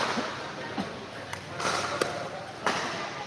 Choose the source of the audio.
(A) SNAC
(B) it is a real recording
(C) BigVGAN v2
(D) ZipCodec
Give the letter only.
B